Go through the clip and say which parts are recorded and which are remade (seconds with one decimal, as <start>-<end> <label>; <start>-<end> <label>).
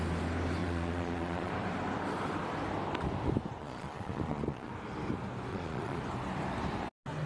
0.0-0.6 recorded; 0.6-1.5 remade; 1.5-3.6 recorded; 3.6-4.7 remade; 4.7-5.5 recorded; 5.5-6.0 remade; 6.0-7.3 recorded